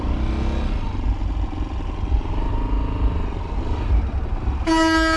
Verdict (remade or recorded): recorded